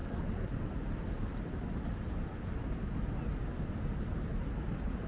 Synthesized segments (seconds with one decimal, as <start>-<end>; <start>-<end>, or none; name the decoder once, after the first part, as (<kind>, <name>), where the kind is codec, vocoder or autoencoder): 0.0-3.1 (vocoder, BigVGAN v2)